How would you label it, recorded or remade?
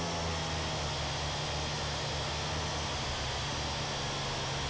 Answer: recorded